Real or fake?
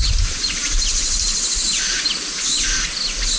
real